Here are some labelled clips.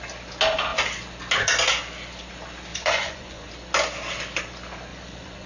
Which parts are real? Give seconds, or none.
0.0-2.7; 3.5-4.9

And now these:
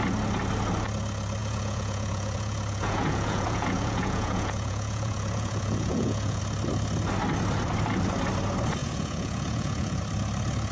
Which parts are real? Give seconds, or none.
0.0-1.4; 6.4-8.8; 10.0-10.7

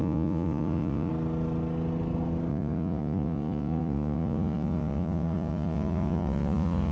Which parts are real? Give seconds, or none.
1.1-2.5